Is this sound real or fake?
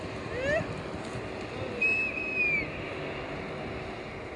real